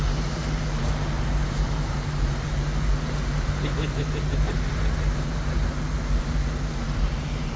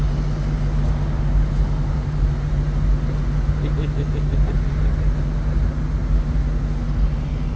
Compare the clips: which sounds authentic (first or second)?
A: second